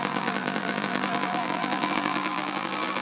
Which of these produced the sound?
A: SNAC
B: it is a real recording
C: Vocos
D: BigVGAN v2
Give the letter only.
D